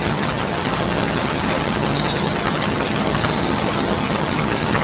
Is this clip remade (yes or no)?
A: yes